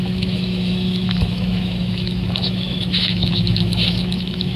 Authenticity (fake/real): fake